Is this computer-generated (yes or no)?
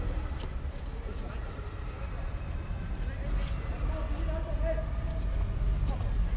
no